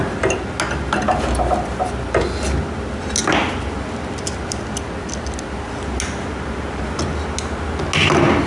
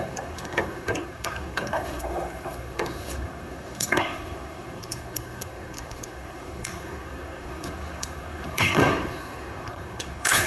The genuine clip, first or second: first